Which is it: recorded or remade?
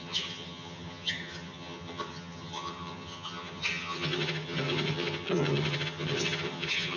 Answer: remade